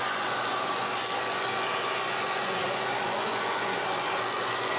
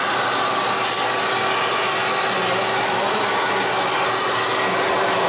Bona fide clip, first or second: second